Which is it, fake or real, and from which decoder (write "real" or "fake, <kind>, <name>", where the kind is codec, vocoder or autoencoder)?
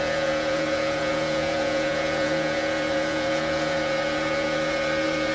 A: fake, vocoder, Vocos